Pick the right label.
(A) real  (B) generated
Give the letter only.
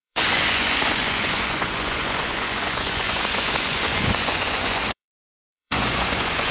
B